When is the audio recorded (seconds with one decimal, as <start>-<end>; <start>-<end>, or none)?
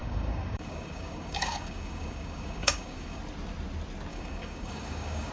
3.2-4.1